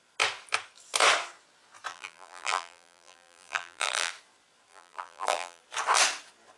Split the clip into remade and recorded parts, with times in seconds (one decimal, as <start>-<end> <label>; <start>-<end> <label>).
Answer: 0.0-1.9 recorded; 1.9-4.1 remade; 4.1-4.7 recorded; 4.7-5.6 remade; 5.6-6.6 recorded